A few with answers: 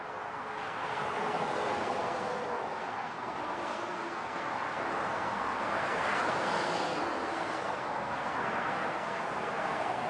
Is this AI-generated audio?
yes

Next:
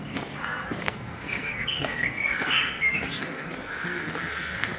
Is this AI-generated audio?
yes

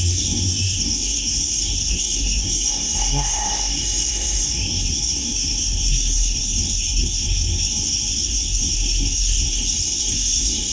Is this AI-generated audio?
yes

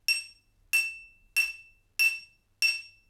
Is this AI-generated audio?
no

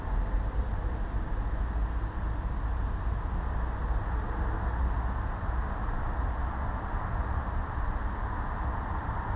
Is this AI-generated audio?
no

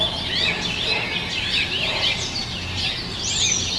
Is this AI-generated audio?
no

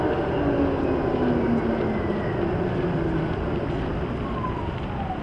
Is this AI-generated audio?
no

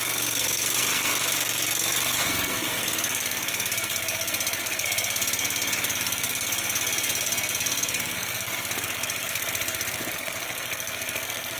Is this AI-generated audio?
yes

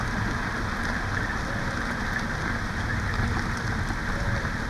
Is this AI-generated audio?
no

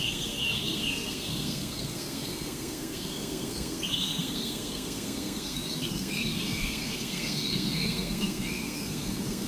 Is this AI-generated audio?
yes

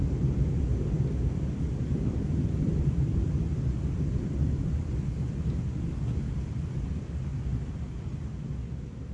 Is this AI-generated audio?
no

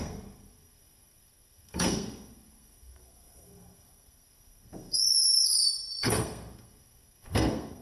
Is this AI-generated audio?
yes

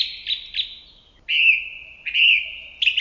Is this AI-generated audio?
no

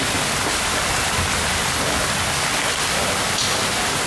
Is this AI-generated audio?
no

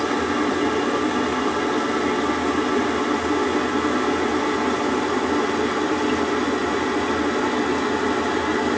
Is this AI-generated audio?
no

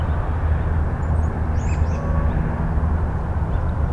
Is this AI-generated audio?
no